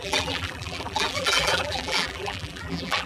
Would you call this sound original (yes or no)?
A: no